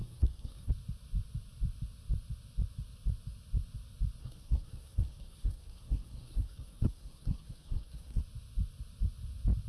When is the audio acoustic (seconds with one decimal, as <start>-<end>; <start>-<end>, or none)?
0.7-4.2; 8.2-9.7